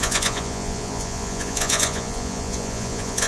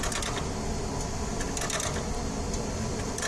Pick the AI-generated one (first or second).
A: first